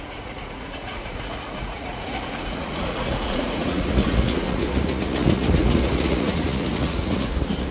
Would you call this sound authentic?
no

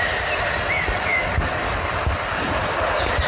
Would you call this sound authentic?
yes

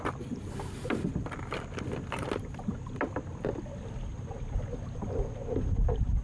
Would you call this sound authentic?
yes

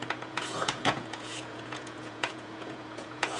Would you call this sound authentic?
no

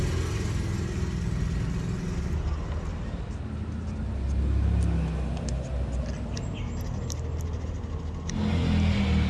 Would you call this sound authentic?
yes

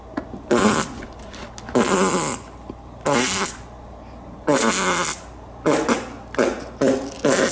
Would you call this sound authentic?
yes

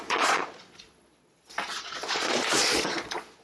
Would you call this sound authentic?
no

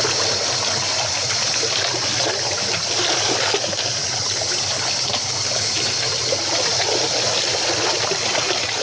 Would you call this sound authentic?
yes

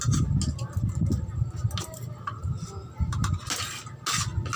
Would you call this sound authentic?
yes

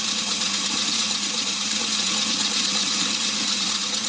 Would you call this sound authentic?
no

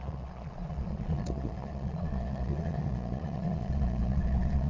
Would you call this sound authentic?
no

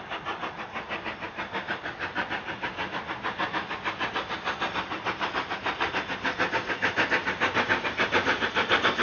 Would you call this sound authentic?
yes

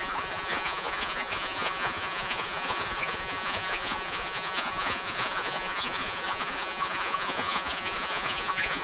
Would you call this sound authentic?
no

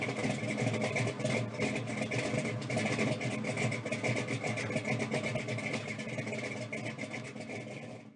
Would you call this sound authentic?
yes